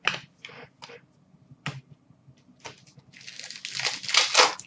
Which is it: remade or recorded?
recorded